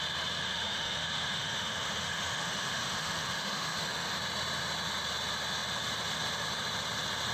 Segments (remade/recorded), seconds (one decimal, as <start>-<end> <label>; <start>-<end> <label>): 0.0-0.4 recorded; 0.4-4.2 remade; 4.2-7.3 recorded